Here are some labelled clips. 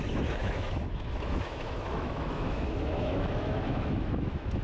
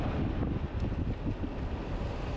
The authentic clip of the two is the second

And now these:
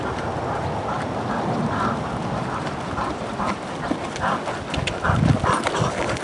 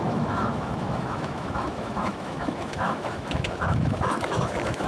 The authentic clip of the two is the first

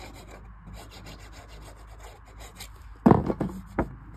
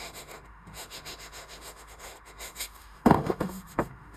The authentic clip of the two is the first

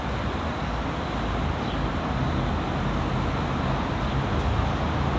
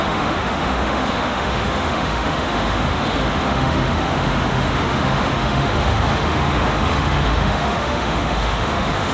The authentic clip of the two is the first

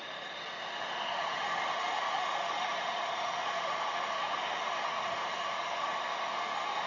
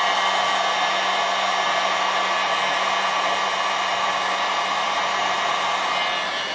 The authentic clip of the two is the second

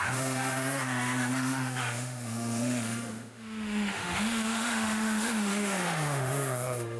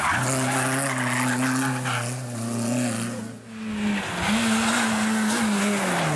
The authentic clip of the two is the second